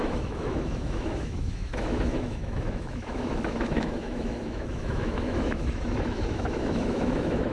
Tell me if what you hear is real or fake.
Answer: fake